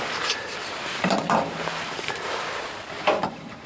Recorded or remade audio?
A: remade